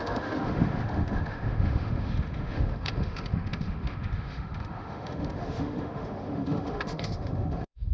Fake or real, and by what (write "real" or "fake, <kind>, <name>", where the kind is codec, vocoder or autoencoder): fake, autoencoder, DAC-VAE